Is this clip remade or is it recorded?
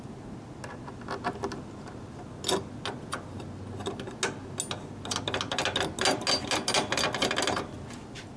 recorded